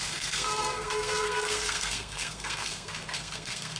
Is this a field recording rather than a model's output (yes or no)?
no